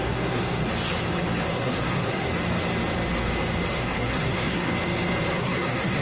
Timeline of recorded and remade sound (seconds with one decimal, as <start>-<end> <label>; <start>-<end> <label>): 0.0-0.7 remade; 0.7-1.5 recorded; 1.5-2.3 remade; 2.3-3.7 recorded; 3.7-4.7 remade; 4.7-5.3 recorded; 5.3-6.0 remade